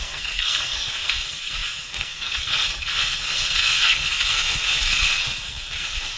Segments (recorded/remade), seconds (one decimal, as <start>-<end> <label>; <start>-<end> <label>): 0.0-6.2 remade